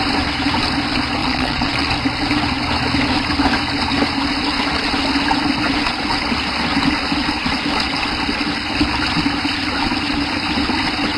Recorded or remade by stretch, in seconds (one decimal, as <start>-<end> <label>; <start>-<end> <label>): 0.0-1.2 recorded; 1.2-1.9 remade; 1.9-11.2 recorded